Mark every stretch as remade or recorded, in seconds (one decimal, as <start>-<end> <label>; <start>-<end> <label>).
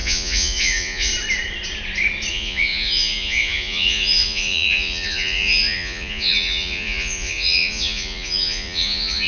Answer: 0.0-1.1 remade; 1.1-2.3 recorded; 2.3-9.3 remade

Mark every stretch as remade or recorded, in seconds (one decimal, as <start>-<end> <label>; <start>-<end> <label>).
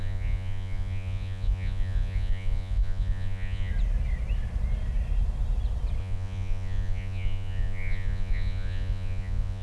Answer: 0.0-3.7 remade; 3.7-6.0 recorded; 6.0-9.6 remade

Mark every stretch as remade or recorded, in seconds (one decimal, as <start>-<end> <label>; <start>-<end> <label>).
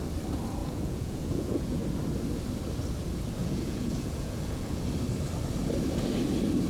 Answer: 0.0-0.6 recorded; 0.6-1.8 remade; 1.8-3.4 recorded; 3.4-4.8 remade; 4.8-6.7 recorded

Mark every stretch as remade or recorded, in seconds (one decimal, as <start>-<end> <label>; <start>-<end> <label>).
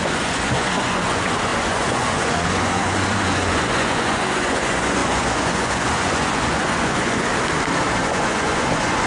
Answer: 0.0-7.3 remade; 7.3-8.0 recorded; 8.0-9.1 remade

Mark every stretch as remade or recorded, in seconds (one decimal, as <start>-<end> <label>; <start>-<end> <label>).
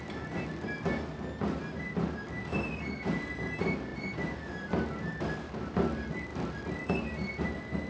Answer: 0.0-7.9 recorded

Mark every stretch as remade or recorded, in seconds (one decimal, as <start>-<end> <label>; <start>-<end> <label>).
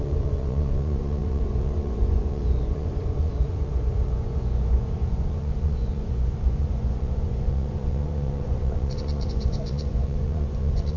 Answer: 0.0-11.0 remade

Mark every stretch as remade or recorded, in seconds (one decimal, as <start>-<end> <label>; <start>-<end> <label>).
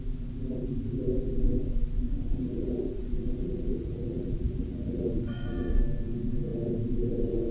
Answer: 0.0-2.3 recorded; 2.3-5.8 remade; 5.8-7.5 recorded